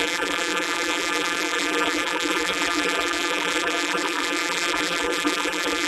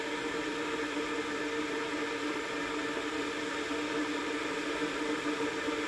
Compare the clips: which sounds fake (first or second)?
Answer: first